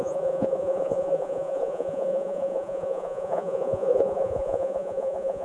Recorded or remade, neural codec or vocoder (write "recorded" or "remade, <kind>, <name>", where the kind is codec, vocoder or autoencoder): remade, vocoder, Vocos